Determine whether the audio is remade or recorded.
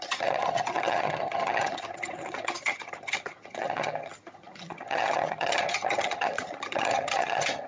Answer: remade